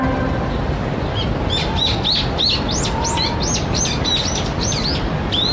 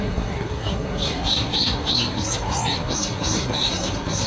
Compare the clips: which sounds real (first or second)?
first